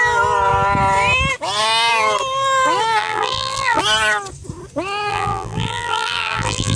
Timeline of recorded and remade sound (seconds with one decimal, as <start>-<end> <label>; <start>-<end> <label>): 0.0-3.0 recorded; 3.0-3.8 remade; 3.8-5.1 recorded; 5.1-6.8 remade